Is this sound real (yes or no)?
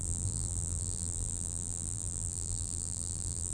no